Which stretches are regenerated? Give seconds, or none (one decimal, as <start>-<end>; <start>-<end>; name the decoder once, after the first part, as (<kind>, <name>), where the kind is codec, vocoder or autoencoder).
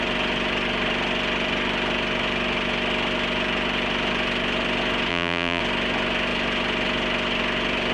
5.1-5.6 (vocoder, BigVGAN v2)